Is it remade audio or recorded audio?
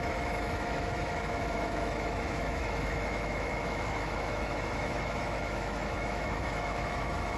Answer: remade